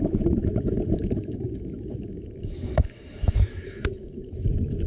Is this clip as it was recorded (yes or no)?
no